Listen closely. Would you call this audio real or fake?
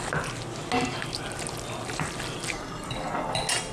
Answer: real